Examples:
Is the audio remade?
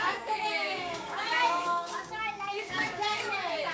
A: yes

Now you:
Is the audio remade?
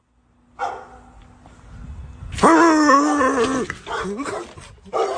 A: no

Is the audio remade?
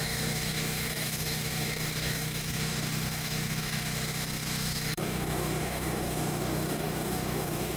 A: yes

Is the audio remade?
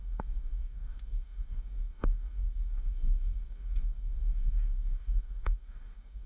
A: yes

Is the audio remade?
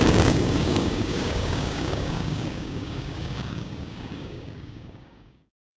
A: yes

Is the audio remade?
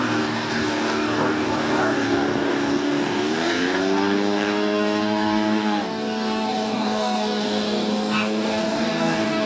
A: yes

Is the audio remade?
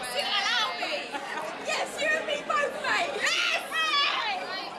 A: no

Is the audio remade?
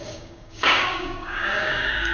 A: yes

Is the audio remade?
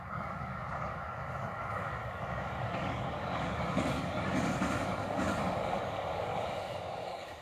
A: yes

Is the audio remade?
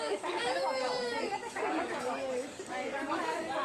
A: yes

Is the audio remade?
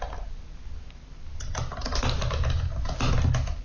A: no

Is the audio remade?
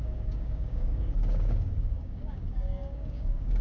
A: yes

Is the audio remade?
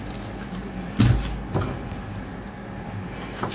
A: no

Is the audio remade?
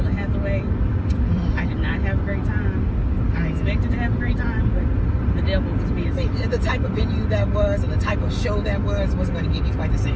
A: no